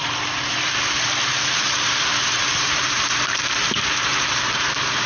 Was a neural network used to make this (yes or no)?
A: yes